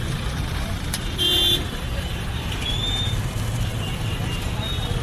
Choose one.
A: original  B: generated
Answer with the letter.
B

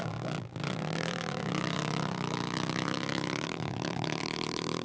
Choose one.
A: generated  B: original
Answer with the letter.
A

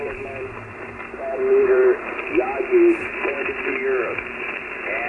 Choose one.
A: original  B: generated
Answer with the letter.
B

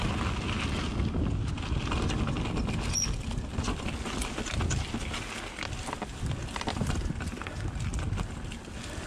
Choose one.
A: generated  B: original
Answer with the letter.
B